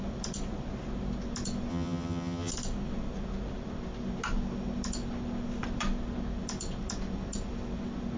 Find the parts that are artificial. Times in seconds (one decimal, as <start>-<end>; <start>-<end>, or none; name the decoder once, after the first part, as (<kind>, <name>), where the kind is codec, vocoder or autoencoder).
1.7-2.5 (vocoder, HiFi-GAN)

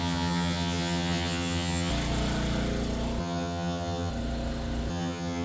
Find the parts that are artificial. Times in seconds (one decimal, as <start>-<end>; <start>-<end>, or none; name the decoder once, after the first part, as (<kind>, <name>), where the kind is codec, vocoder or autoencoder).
0.0-1.9 (vocoder, HiFi-GAN); 3.2-4.1; 4.9-5.4

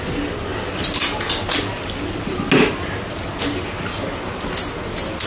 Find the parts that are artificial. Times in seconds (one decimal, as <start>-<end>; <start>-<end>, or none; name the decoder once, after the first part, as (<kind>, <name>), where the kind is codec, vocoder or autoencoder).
none

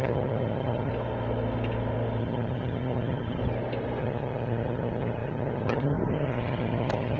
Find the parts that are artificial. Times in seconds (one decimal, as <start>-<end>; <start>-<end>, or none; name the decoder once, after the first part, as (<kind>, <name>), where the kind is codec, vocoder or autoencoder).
0.0-0.9 (vocoder, HiFi-GAN); 2.2-3.4; 4.0-7.2

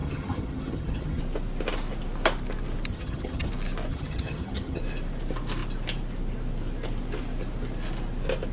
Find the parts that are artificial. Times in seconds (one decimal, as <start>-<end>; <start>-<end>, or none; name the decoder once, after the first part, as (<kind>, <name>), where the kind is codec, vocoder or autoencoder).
0.0-1.2 (vocoder, HiFi-GAN); 2.9-3.5; 3.9-4.8